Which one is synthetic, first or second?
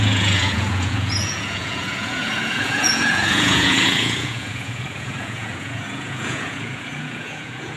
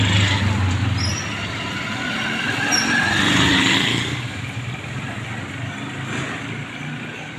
first